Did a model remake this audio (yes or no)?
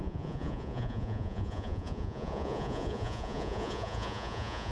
yes